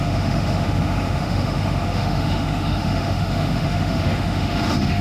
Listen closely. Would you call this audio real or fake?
fake